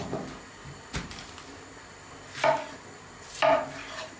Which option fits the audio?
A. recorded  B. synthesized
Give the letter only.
A